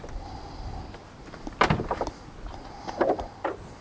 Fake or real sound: real